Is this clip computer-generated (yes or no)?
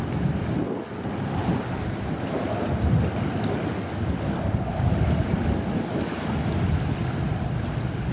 no